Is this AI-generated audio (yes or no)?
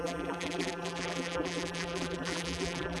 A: yes